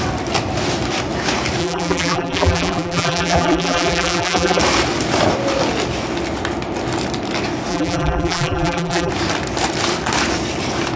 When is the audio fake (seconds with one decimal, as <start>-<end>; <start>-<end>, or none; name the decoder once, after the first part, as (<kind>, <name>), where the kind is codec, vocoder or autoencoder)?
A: 1.6-4.6 (vocoder, BigVGAN v2); 7.7-9.1